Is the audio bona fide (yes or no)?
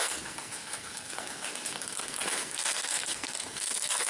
no